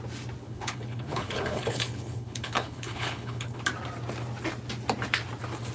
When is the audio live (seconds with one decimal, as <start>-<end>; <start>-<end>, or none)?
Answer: 0.0-0.4; 3.6-5.7